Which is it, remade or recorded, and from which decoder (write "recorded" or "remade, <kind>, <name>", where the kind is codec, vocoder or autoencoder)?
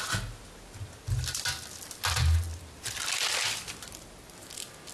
remade, vocoder, BigVGAN v2